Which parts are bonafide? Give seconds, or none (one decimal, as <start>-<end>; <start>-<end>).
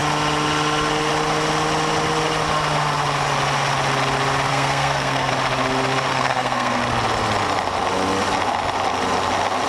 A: 0.0-4.5; 5.3-6.1; 6.8-9.7